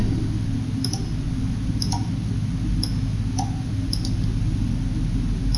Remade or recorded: recorded